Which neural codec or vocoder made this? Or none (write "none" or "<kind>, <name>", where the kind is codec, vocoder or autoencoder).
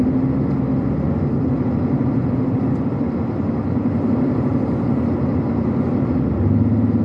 none